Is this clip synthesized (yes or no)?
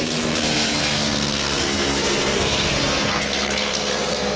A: yes